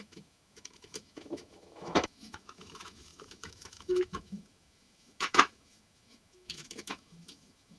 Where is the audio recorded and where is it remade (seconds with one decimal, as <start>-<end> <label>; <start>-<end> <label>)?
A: 0.0-7.8 remade